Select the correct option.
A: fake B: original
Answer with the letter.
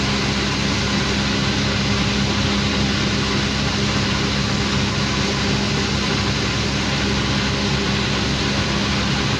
B